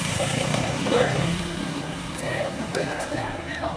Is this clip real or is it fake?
fake